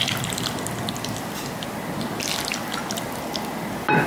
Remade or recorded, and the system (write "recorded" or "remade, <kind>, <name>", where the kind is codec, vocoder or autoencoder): recorded